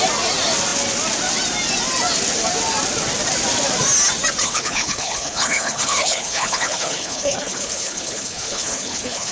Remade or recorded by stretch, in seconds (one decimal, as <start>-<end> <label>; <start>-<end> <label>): 0.0-4.4 recorded; 4.4-9.3 remade